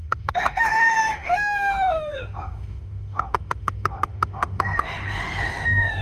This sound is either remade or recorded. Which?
remade